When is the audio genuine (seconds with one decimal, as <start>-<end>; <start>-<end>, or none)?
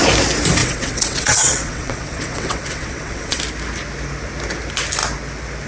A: 0.0-0.6; 3.4-5.7